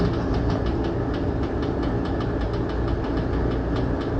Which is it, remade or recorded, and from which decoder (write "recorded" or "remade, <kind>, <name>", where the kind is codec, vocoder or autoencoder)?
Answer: recorded